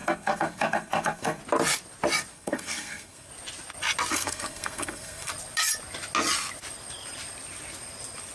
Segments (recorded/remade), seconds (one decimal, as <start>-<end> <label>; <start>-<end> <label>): 0.0-1.4 remade; 1.4-2.3 recorded; 2.3-3.3 remade; 3.3-4.1 recorded; 4.1-5.3 remade; 5.3-8.3 recorded